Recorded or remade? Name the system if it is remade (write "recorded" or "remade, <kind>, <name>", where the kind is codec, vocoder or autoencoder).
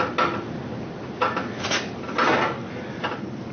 recorded